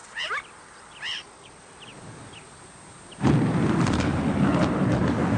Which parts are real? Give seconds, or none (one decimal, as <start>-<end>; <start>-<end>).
1.9-4.6